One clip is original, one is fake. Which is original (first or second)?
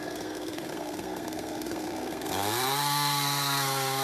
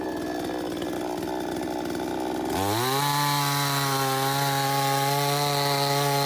second